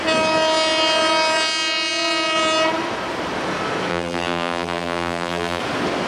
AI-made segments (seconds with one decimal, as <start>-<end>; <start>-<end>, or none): 3.9-5.6